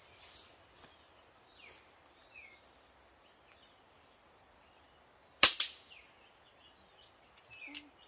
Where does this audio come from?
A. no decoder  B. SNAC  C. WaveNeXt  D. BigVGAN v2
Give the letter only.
A